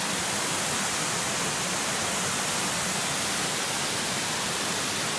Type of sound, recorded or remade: recorded